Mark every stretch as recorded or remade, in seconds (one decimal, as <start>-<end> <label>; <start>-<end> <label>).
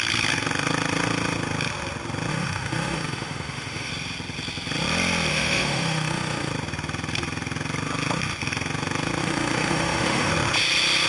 0.0-2.3 recorded; 2.3-3.9 remade; 3.9-5.3 recorded; 5.3-6.5 remade; 6.5-9.2 recorded; 9.2-10.3 remade; 10.3-11.1 recorded